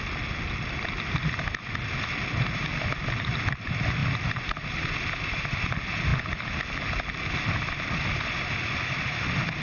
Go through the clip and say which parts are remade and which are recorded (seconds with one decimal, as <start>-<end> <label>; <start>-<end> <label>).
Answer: 0.0-9.6 recorded